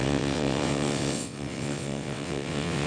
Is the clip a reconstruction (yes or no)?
yes